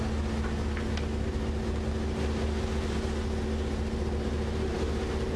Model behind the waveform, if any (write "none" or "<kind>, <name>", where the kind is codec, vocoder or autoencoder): none